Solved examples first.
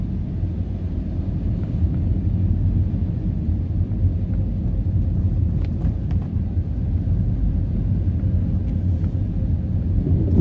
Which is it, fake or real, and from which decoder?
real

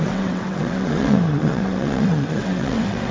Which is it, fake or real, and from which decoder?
fake, vocoder, WaveNeXt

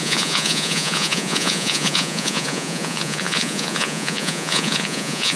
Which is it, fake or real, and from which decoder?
fake, vocoder, Vocos